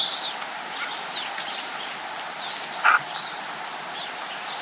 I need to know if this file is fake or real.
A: real